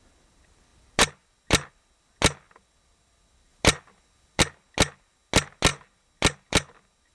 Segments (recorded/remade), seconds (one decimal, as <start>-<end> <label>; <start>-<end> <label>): 0.0-7.1 recorded